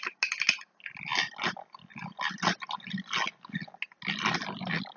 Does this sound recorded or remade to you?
recorded